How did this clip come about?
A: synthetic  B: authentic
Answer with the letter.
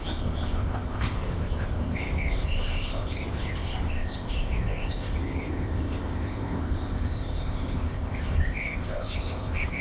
A